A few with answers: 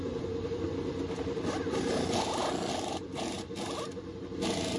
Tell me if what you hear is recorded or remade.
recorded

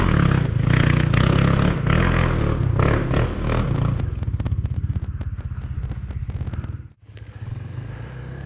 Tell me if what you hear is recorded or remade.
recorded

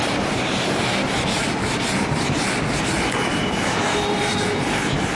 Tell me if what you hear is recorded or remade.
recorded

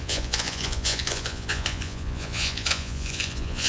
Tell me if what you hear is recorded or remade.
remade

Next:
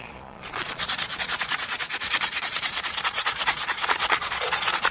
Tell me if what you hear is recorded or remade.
remade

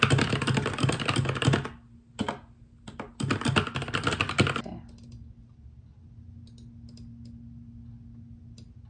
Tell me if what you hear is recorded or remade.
recorded